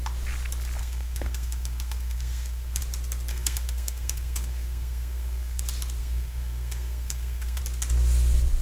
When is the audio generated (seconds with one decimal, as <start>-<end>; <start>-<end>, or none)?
0.8-2.8; 3.3-5.6; 6.0-7.6